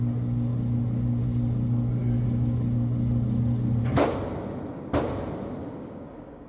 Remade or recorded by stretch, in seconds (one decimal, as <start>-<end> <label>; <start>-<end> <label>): 0.0-5.6 recorded; 5.6-6.5 remade